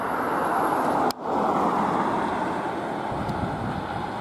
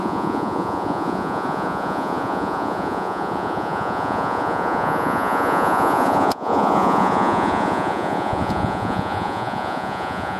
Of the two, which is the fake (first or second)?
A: second